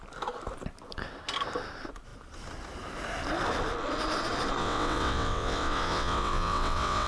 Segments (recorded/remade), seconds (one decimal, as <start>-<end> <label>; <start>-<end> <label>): 0.0-4.6 recorded; 4.6-7.1 remade